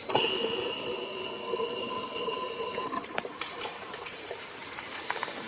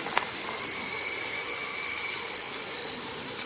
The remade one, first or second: first